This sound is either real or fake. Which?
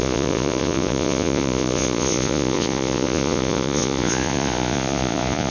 fake